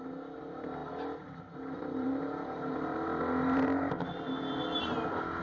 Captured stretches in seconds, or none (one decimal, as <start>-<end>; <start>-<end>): 0.0-5.4